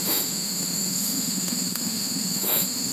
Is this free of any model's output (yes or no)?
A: no